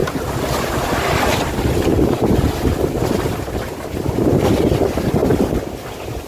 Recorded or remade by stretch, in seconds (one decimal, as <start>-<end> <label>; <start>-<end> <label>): 0.0-6.3 recorded